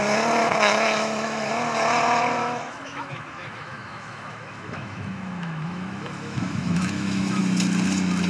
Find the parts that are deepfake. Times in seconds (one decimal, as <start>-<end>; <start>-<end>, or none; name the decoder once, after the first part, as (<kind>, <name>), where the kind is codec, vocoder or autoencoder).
0.4-1.5 (autoencoder, DAC-VAE); 2.4-7.4